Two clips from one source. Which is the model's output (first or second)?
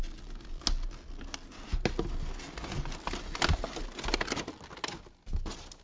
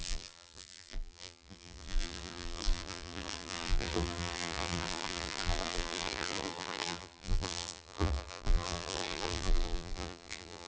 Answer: second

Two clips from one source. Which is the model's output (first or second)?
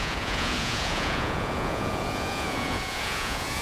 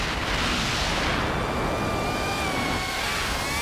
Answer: first